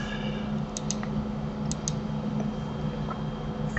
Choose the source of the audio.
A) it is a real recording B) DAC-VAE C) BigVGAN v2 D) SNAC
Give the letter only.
A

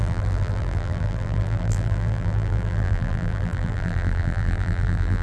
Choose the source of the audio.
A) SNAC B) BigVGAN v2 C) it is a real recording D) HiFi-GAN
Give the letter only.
B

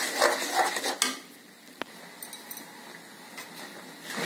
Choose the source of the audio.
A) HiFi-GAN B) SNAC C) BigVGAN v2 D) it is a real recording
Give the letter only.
D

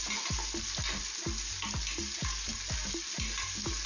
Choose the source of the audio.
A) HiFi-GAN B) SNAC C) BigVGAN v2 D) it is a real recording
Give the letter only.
D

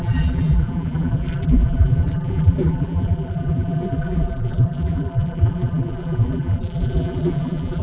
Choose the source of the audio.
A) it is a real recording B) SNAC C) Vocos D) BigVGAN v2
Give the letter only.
D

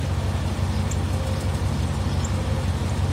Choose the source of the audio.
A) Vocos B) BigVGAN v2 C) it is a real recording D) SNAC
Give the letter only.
C